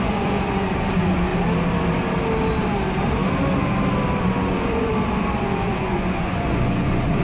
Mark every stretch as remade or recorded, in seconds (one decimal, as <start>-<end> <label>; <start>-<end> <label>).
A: 0.0-1.3 remade; 1.3-4.2 recorded; 4.2-4.9 remade; 4.9-5.4 recorded; 5.4-7.2 remade